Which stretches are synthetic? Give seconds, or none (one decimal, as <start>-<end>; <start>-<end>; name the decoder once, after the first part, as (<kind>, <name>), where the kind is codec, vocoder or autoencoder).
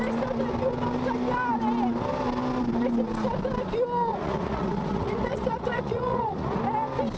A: 4.1-6.6 (vocoder, Vocos)